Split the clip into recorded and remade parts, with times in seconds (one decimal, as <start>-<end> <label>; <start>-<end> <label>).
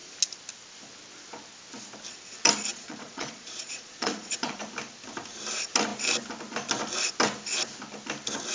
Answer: 0.0-2.7 recorded; 2.7-4.6 remade; 4.6-8.5 recorded